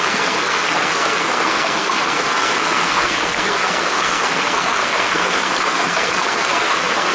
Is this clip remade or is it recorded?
remade